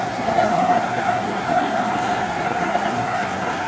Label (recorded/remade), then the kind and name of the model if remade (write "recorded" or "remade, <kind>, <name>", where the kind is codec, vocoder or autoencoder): remade, codec, SNAC